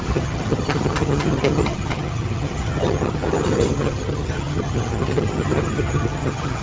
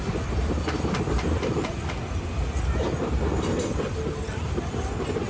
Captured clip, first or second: second